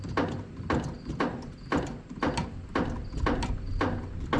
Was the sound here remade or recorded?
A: recorded